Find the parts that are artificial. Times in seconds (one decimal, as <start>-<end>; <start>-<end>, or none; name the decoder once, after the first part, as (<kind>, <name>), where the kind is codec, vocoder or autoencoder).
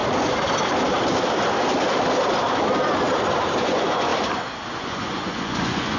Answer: 3.6-4.1 (vocoder, Vocos); 4.7-6.0